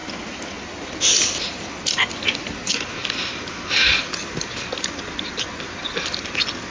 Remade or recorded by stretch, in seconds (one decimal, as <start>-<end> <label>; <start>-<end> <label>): 0.0-6.7 recorded